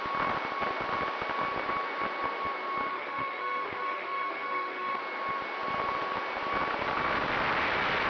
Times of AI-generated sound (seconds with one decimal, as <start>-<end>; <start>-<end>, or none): 2.9-5.0